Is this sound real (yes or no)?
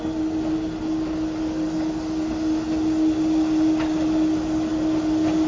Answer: yes